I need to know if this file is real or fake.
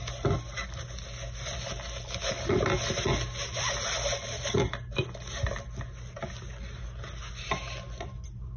real